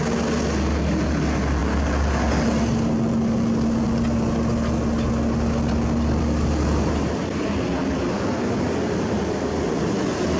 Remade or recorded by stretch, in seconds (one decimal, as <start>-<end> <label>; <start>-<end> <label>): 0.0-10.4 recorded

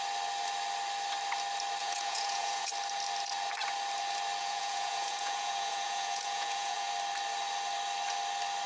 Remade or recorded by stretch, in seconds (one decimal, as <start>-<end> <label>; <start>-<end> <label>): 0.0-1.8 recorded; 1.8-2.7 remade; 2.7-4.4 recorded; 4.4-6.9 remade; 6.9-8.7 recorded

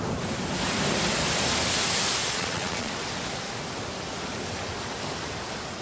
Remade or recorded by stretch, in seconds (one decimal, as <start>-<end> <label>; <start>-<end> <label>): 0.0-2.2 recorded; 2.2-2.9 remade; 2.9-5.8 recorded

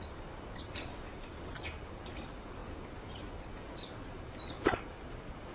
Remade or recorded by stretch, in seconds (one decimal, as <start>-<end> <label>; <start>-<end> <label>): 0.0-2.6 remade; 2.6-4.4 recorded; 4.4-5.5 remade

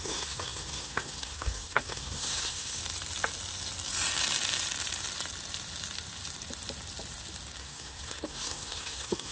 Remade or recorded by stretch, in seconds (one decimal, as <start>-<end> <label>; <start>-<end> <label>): 0.0-2.8 remade; 2.8-7.6 recorded; 7.6-9.3 remade